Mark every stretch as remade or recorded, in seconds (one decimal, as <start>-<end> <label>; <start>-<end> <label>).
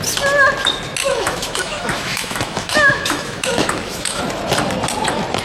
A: 0.0-1.0 recorded; 1.0-4.2 remade; 4.2-5.4 recorded